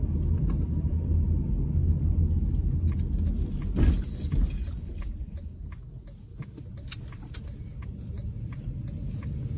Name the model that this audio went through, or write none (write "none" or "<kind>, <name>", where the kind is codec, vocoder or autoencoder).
none